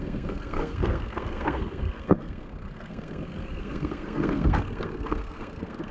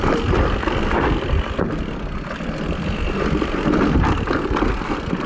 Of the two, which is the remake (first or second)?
first